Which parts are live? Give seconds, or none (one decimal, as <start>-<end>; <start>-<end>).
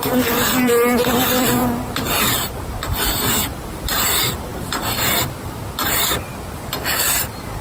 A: 0.0-7.6